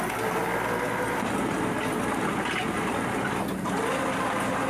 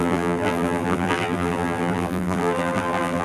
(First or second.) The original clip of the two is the first